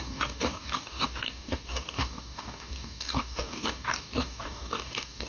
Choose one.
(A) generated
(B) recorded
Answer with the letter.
A